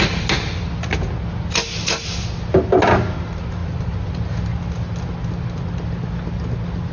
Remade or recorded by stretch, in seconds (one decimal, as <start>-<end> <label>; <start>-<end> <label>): 0.0-6.9 recorded